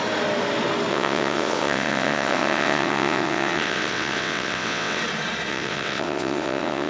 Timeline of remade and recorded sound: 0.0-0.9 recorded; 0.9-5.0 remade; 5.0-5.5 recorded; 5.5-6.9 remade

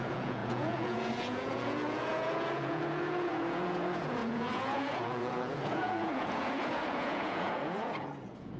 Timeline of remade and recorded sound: 0.0-8.6 remade

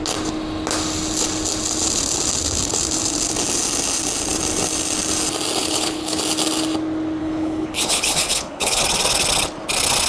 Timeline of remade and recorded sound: 0.0-5.6 recorded; 5.6-6.2 remade; 6.2-7.2 recorded; 7.2-8.8 remade; 8.8-10.1 recorded